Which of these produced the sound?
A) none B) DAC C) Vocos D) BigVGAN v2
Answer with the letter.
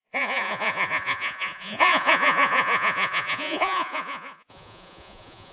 C